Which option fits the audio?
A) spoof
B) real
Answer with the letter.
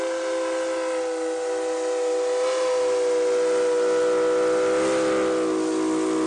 B